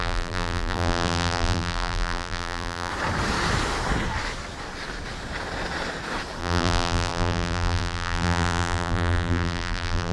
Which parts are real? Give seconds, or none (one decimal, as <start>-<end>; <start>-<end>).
2.9-6.4